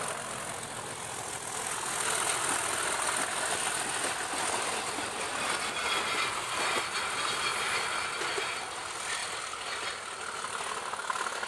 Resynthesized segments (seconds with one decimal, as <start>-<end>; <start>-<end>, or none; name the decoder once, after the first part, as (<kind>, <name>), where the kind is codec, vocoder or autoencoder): none